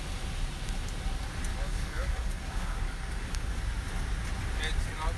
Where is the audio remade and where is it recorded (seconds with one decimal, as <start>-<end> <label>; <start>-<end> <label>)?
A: 0.0-1.5 recorded; 1.5-3.6 remade; 3.6-5.2 recorded